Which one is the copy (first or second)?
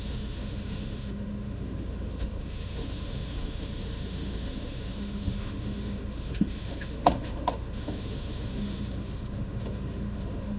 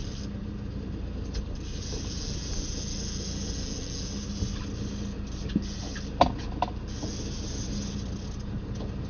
first